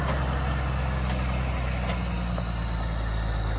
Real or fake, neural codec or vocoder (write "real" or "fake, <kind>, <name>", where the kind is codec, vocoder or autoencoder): real